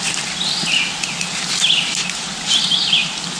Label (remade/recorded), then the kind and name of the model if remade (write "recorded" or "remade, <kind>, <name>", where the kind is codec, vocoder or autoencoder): recorded